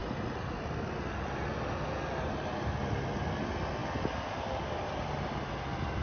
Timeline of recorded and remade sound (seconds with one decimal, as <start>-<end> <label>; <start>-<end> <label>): 0.0-6.0 recorded